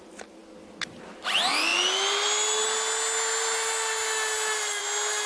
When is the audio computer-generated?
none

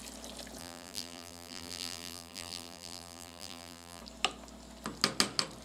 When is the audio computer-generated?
0.6-4.0

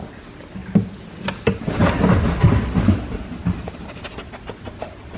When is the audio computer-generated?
none

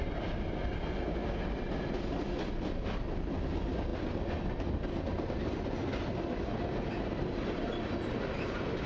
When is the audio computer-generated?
none

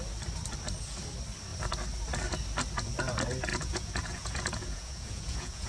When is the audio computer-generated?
3.5-5.7

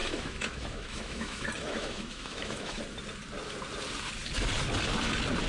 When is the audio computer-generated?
0.0-2.8

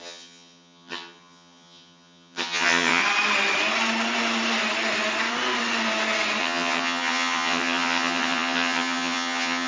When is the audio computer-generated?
0.0-3.0; 6.4-9.7

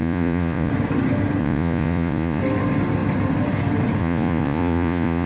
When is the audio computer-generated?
0.0-0.7; 1.4-2.4; 4.0-5.3